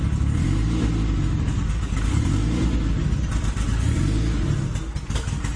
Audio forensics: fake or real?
real